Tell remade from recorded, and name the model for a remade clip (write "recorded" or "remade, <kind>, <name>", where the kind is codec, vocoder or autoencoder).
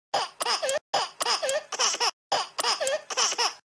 recorded